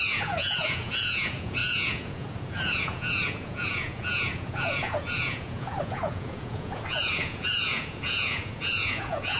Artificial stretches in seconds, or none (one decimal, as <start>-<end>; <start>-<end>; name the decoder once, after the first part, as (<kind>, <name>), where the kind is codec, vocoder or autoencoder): 0.0-9.4 (vocoder, Vocos)